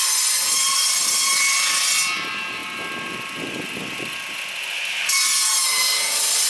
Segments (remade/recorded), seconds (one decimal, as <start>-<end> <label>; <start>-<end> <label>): 0.0-6.5 recorded